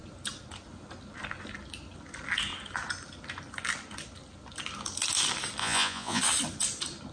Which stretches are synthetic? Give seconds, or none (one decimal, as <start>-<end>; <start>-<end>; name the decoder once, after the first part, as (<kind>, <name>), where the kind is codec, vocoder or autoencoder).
5.6-6.2 (vocoder, Vocos)